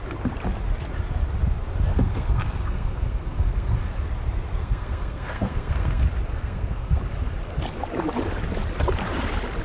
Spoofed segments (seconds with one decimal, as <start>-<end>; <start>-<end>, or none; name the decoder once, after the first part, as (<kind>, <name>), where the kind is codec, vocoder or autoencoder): 1.9-3.9 (codec, SNAC); 4.6-6.0; 6.4-7.0